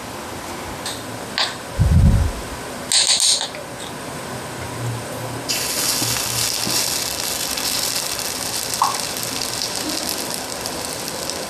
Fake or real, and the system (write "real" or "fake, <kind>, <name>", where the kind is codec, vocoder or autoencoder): real